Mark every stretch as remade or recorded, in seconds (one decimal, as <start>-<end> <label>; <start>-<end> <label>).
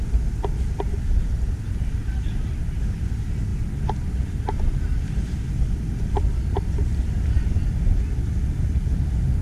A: 0.0-9.4 recorded